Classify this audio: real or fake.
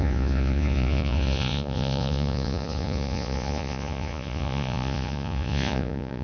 fake